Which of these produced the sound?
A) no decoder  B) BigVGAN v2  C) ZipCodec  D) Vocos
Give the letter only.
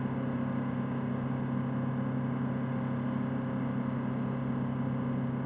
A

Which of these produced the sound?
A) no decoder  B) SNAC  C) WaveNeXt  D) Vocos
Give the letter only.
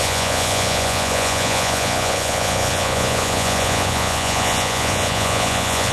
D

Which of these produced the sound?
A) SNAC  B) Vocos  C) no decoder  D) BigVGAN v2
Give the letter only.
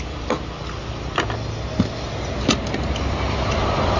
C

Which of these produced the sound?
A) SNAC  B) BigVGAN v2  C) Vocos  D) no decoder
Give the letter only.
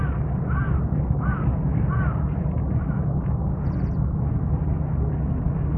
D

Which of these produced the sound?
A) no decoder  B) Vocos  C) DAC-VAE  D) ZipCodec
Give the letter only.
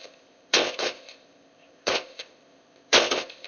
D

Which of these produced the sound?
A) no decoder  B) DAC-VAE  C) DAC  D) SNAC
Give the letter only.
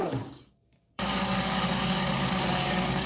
C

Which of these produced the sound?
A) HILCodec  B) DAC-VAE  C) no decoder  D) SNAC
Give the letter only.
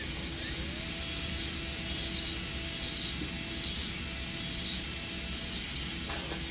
C